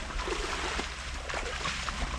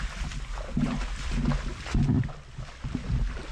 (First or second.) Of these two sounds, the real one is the first